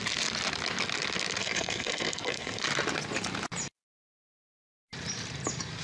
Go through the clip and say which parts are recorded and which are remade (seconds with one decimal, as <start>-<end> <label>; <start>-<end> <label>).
0.0-1.4 recorded; 1.4-2.6 remade; 2.6-5.8 recorded